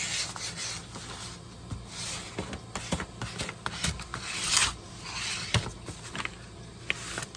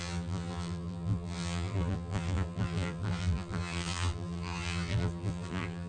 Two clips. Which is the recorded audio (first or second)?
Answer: first